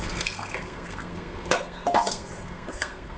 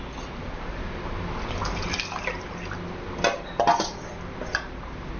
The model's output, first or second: first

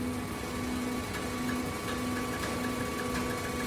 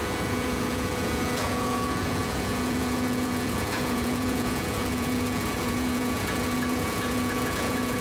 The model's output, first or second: second